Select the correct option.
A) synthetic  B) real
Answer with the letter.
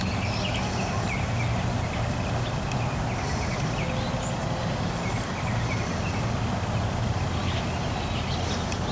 B